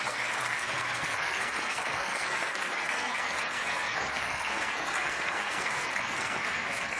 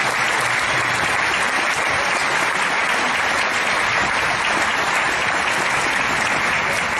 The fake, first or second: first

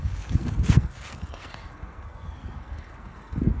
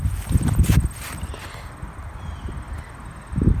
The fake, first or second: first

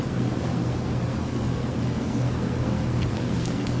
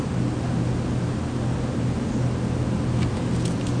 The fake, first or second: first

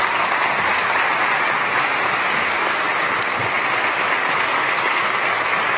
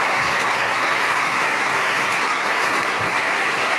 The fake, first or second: second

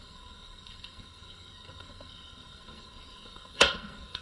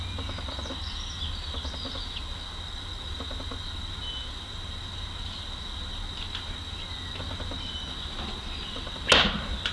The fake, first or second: first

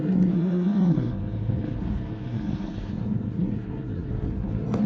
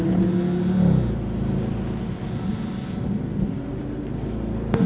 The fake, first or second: first